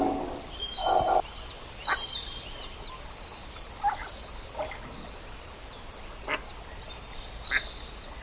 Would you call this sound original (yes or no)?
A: yes